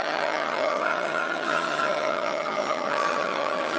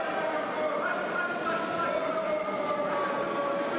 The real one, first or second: second